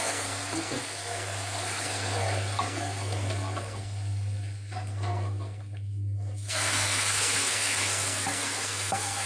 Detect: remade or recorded remade